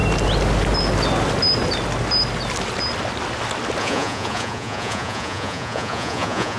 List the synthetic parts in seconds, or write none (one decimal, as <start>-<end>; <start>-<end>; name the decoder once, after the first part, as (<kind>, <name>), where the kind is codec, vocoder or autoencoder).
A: 3.8-6.6 (vocoder, Vocos)